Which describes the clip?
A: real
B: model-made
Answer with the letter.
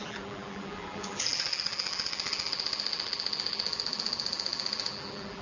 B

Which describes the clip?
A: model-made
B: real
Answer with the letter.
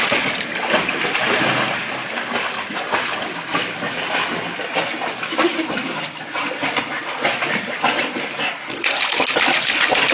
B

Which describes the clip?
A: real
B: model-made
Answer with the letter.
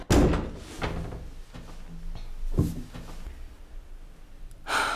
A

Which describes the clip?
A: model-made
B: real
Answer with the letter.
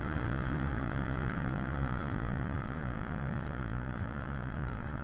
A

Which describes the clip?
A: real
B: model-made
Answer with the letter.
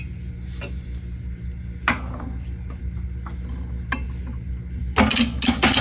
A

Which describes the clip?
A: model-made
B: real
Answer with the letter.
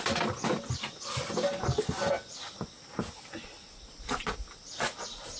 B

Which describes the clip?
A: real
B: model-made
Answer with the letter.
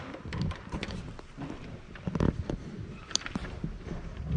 B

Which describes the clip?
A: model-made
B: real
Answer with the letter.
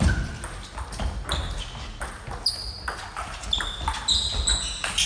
B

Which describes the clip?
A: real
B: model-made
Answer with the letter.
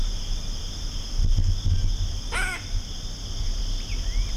A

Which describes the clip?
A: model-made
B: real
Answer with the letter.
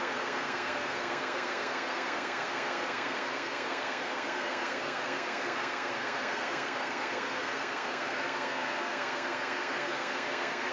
A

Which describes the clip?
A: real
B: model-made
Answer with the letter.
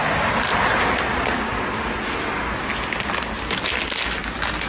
A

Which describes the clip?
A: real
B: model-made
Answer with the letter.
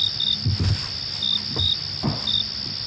A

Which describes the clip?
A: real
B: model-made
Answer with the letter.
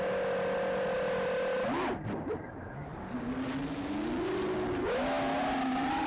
A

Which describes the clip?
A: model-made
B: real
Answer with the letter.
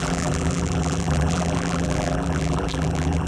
A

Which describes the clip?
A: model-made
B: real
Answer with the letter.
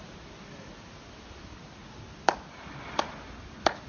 B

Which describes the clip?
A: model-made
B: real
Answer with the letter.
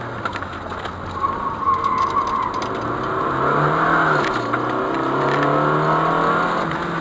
B